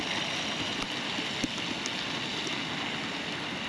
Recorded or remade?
recorded